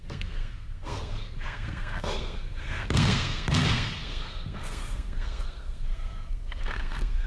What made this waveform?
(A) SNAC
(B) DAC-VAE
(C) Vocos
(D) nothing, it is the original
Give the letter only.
A